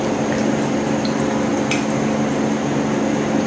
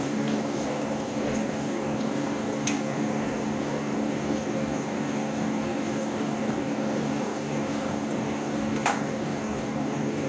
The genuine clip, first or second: first